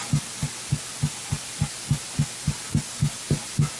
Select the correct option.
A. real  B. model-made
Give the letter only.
A